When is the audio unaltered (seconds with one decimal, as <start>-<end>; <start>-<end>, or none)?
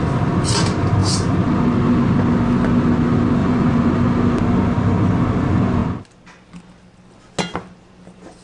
0.0-3.4; 3.9-8.4